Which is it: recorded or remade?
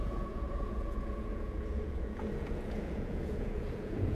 remade